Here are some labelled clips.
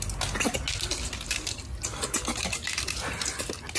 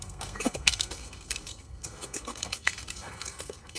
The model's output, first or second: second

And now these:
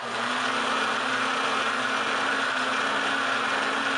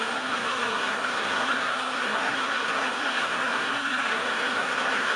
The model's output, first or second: second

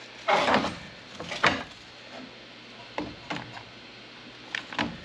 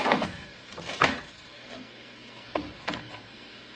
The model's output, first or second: second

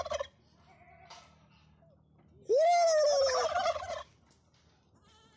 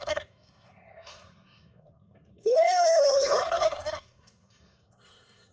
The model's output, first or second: second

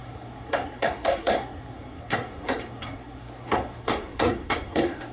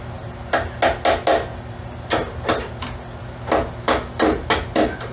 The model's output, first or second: first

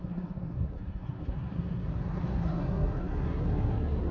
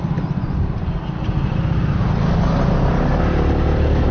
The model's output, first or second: first